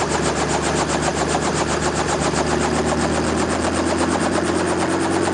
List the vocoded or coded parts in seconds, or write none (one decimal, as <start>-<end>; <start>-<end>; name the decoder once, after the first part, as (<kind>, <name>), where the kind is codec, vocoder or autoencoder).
none